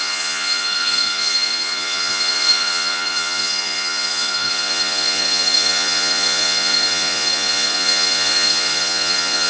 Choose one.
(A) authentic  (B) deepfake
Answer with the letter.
B